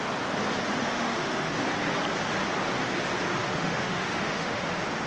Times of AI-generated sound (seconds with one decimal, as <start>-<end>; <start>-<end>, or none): 0.9-1.5; 3.4-4.6